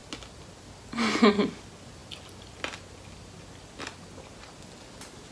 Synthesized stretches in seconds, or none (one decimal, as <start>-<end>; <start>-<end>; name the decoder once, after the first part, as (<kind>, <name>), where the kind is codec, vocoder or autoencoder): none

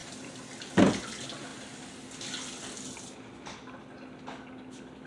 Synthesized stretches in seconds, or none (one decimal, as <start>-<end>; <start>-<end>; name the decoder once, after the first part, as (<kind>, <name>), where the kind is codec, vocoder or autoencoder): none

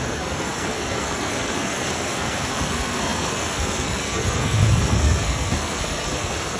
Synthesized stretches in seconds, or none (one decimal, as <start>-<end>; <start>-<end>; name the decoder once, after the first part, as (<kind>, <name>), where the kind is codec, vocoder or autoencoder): 0.0-6.6 (codec, SNAC)

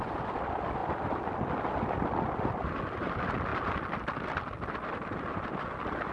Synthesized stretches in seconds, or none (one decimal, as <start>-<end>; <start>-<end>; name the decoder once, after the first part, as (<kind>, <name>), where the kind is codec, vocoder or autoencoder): none

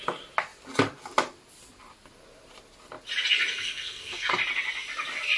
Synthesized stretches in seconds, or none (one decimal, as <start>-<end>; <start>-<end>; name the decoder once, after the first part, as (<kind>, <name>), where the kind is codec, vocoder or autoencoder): 3.5-4.3 (codec, SNAC)

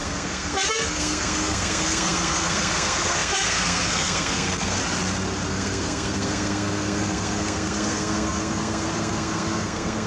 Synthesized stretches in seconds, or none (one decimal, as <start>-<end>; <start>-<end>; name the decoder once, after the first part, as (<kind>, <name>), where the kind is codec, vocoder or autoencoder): 0.0-4.8 (codec, SNAC); 5.5-10.1

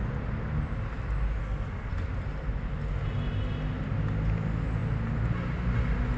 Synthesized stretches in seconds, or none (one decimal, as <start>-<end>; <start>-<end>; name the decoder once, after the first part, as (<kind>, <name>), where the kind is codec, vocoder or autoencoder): 1.4-1.9 (codec, SNAC)

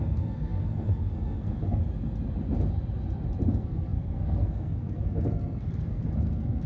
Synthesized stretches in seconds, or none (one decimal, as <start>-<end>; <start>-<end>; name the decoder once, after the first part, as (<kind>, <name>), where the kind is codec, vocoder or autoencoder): 0.0-1.8 (codec, SNAC); 3.5-6.7